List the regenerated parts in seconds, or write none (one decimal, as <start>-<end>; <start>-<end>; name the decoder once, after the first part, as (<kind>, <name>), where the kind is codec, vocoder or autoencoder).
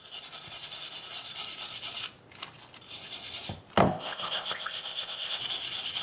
3.8-5.4 (codec, ZipCodec)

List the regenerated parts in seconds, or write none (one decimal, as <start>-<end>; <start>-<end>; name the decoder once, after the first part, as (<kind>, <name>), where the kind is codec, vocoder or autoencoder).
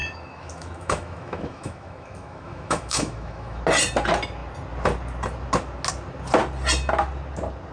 0.0-3.6 (autoencoder, DAC-VAE)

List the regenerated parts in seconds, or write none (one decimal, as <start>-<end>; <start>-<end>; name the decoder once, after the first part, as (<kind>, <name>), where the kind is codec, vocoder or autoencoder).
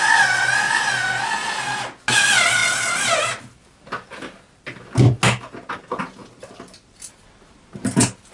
none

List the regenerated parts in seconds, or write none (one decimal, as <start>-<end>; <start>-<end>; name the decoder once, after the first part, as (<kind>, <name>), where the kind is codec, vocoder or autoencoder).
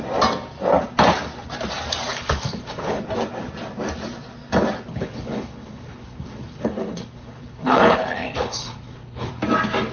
2.1-3.0 (codec, HILCodec); 4.9-9.3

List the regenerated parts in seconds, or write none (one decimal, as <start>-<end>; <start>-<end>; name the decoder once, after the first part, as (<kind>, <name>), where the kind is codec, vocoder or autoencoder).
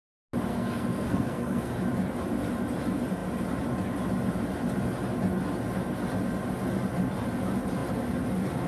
0.5-1.7 (codec, SNAC)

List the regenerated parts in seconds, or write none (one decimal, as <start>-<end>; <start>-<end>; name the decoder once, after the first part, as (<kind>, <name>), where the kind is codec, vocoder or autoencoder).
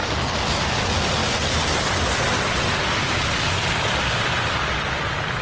none